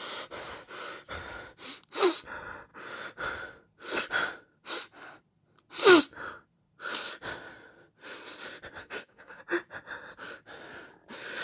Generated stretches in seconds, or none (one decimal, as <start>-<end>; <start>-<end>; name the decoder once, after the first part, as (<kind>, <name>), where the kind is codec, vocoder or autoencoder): 8.8-9.4 (codec, DAC)